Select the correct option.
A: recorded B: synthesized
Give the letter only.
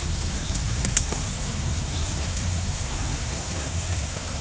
B